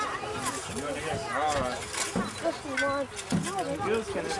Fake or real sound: real